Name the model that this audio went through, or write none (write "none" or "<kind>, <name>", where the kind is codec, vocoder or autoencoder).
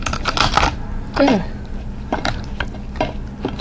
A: none